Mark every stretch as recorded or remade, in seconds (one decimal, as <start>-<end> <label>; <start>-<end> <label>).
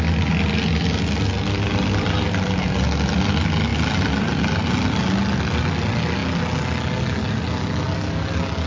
0.0-3.7 recorded; 3.7-4.4 remade; 4.4-8.7 recorded